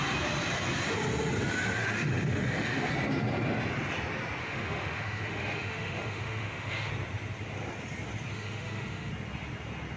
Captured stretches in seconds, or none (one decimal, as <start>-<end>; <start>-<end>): 0.0-1.8; 2.9-4.4; 6.9-8.3; 9.1-10.0